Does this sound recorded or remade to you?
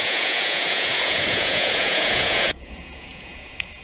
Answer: remade